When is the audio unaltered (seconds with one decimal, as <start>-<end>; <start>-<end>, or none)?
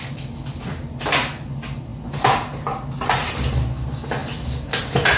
0.0-5.2